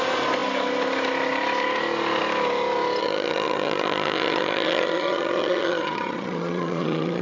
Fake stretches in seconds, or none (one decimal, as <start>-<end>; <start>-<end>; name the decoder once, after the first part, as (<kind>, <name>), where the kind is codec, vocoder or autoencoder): 3.0-7.2 (vocoder, HiFi-GAN)